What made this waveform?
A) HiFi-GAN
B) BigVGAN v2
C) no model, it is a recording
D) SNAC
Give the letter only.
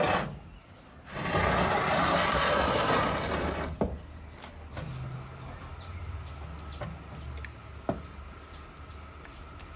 C